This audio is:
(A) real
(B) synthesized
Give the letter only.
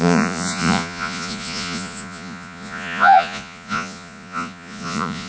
B